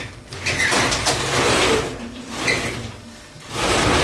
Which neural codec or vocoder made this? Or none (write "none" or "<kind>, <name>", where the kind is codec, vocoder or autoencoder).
none